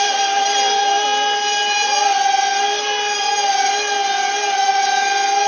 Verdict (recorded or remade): recorded